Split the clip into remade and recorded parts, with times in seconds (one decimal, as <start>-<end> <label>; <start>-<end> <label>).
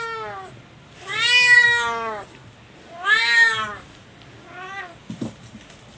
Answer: 0.0-6.0 recorded